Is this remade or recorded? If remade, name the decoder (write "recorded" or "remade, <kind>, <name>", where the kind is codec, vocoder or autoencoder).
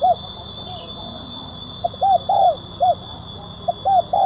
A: recorded